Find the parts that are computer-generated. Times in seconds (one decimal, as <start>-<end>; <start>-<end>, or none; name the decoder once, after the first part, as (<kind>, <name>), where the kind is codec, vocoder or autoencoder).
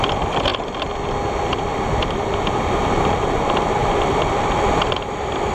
0.0-0.5 (vocoder, BigVGAN v2); 1.6-5.5